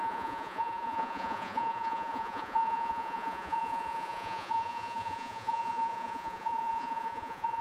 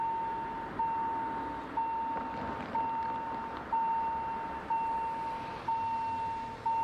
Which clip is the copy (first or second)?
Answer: first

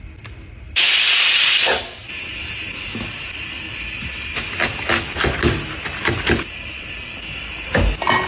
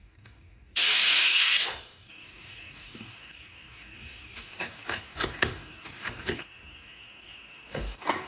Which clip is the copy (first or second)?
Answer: second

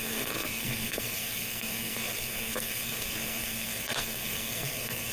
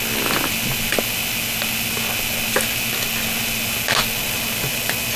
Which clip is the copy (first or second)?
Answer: first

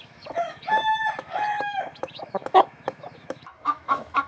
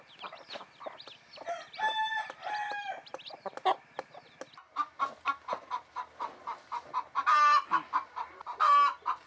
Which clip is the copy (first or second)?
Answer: first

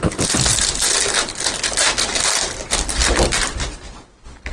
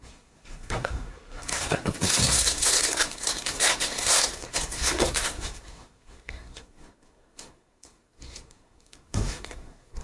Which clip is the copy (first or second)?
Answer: second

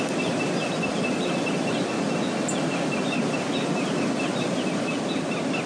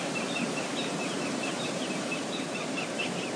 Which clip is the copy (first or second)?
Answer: second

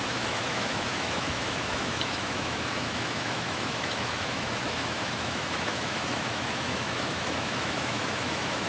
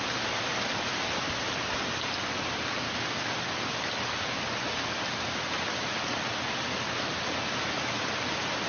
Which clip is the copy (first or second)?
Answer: first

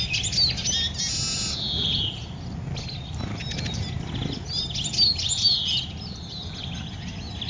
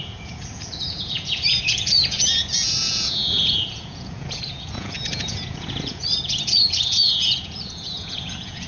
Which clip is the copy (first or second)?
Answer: second